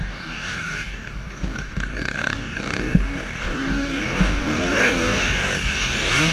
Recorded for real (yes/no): no